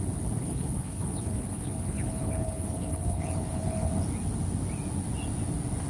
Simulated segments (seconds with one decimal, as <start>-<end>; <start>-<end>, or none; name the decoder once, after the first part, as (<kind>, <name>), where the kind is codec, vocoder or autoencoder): 0.4-3.9 (codec, HILCodec)